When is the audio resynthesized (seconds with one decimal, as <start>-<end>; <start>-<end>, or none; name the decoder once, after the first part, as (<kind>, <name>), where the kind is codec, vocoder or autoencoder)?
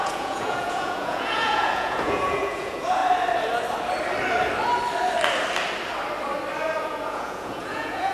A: 0.0-3.0 (vocoder, Vocos); 6.8-8.1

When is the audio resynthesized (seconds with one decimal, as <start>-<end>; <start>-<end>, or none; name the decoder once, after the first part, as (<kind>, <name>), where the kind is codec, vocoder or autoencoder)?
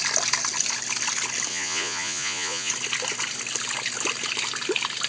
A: 1.5-2.7 (vocoder, Vocos)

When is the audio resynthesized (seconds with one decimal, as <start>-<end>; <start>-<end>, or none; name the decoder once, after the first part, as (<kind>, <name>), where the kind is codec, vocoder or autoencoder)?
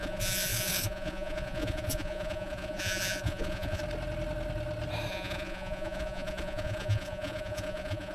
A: 0.0-3.8 (vocoder, Vocos); 5.1-8.1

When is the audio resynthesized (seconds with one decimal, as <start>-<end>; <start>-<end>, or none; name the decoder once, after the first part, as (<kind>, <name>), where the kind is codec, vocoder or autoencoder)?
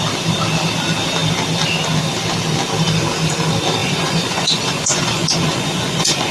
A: 3.8-6.3 (vocoder, Vocos)